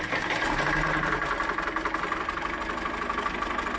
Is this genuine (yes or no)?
yes